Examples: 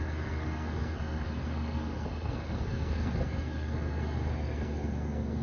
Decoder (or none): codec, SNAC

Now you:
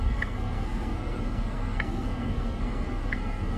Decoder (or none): codec, SNAC